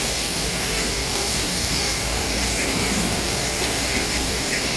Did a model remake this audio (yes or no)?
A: yes